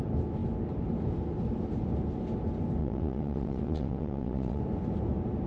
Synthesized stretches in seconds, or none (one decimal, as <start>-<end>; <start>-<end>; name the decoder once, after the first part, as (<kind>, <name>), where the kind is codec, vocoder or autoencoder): 2.8-4.6 (vocoder, WaveNeXt)